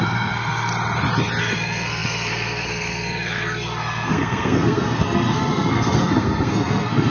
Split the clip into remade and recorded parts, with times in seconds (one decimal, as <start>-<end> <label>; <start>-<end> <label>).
0.0-0.7 remade; 0.7-1.4 recorded; 1.4-7.1 remade